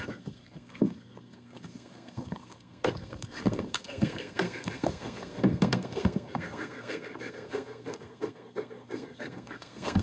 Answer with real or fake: fake